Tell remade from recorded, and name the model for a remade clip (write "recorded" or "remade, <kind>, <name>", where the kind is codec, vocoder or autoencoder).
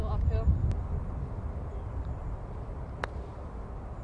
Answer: recorded